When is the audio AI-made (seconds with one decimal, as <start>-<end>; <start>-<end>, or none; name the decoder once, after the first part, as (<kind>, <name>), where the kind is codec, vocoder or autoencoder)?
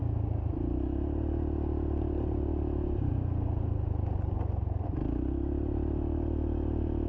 none